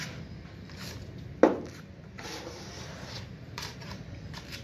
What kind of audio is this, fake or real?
real